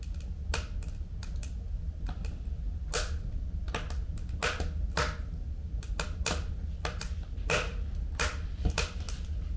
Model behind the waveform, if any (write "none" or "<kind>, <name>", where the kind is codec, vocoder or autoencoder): none